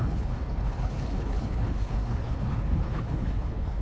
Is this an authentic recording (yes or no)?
no